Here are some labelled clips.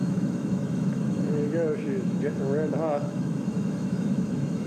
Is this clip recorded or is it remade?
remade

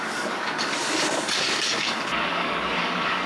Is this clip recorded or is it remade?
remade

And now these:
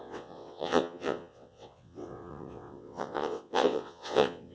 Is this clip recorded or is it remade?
remade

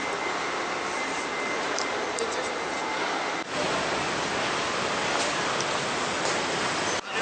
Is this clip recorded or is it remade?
recorded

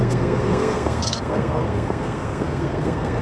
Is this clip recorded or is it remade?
remade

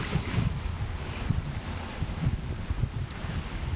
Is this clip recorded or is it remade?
recorded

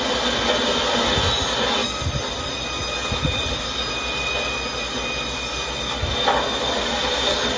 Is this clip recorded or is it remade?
recorded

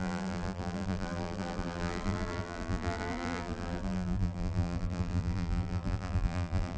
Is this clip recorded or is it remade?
remade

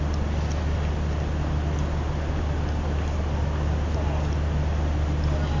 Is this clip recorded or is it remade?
recorded